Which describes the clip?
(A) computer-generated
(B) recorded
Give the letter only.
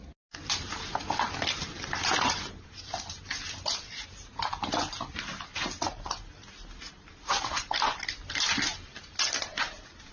B